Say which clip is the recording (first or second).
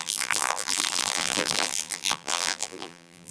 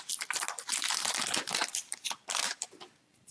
second